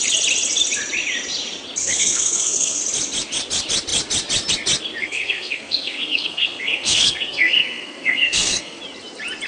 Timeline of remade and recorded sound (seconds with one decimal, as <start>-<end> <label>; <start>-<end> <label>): 0.0-1.8 recorded; 1.8-2.8 remade; 2.8-5.0 recorded; 5.0-8.8 remade; 8.8-9.5 recorded